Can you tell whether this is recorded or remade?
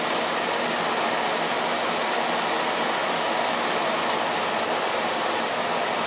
recorded